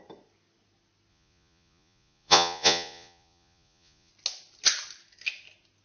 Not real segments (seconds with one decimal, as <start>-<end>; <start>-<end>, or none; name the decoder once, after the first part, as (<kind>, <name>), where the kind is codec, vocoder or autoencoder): 1.1-4.1 (vocoder, Vocos)